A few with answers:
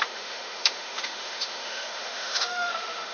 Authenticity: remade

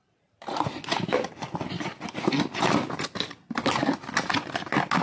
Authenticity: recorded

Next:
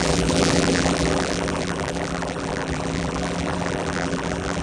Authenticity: remade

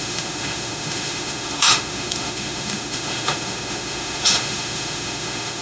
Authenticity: remade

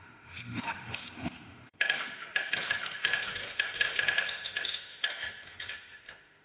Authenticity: remade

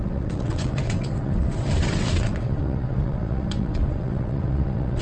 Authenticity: remade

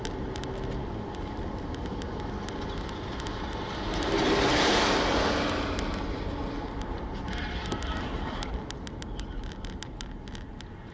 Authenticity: recorded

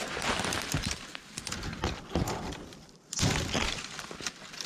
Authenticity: recorded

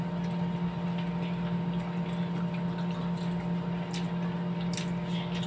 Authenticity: recorded